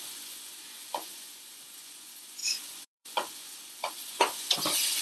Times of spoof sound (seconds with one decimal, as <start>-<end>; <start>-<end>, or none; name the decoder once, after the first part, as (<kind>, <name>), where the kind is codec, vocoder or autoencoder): 0.0-5.0 (vocoder, Vocos)